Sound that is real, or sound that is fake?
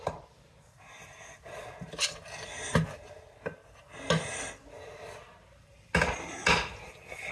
real